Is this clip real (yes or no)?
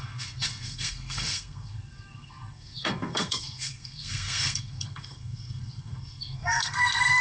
no